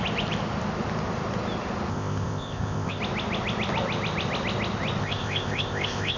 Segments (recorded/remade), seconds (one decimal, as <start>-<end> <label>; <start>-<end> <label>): 0.0-1.9 recorded; 1.9-3.0 remade; 3.0-5.0 recorded; 5.0-6.2 remade